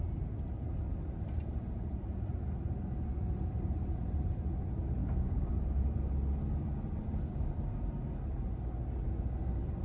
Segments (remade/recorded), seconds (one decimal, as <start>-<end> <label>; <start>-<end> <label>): 0.0-5.0 recorded; 5.0-5.5 remade; 5.5-9.8 recorded